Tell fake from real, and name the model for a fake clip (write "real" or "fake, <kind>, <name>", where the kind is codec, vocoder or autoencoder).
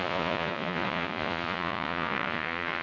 fake, vocoder, Vocos